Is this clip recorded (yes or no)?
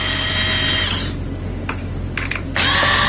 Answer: yes